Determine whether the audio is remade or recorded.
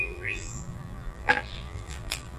remade